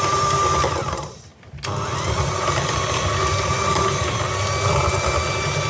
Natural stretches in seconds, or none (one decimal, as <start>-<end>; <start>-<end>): 0.0-5.7